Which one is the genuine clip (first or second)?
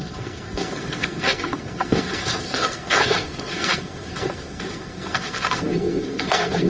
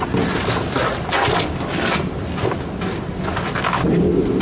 second